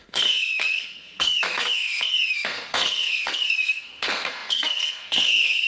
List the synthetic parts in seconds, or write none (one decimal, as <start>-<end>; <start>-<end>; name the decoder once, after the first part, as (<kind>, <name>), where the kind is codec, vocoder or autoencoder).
0.0-5.7 (codec, SNAC)

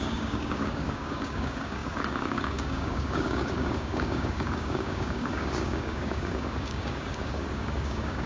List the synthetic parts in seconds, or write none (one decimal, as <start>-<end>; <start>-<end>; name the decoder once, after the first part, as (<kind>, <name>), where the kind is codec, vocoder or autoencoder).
0.0-8.3 (codec, DAC)

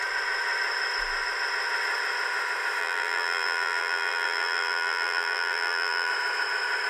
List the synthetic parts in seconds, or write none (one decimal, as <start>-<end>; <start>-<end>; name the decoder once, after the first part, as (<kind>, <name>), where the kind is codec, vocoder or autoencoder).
2.8-6.1 (vocoder, BigVGAN v2)

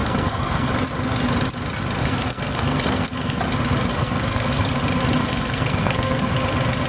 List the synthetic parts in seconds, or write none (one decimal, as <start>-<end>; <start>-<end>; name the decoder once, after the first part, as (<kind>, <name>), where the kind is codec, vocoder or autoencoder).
0.0-0.7 (codec, SNAC); 2.0-3.4; 3.9-4.7; 5.2-6.3

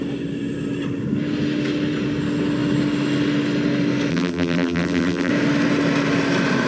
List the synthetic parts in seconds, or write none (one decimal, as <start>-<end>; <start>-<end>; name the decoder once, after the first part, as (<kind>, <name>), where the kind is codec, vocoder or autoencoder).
4.1-5.3 (vocoder, BigVGAN v2)